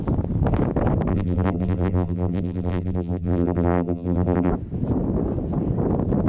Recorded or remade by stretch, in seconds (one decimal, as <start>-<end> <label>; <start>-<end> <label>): 0.0-1.1 recorded; 1.1-4.5 remade; 4.5-6.3 recorded